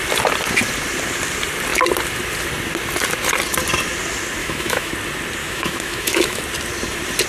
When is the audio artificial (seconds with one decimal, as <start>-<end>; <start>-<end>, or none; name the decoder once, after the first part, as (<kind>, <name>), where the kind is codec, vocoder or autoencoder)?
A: 4.4-4.9 (autoencoder, DAC-VAE); 5.4-6.4